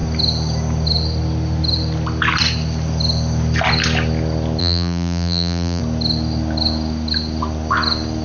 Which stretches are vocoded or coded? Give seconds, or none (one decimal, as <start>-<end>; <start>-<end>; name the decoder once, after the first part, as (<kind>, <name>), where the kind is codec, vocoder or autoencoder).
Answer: 4.6-5.8 (vocoder, BigVGAN v2)